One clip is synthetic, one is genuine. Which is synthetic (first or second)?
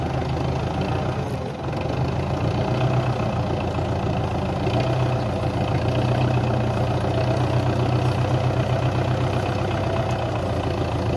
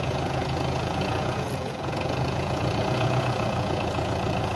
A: second